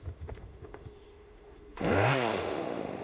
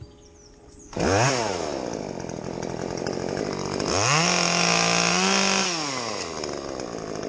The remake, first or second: first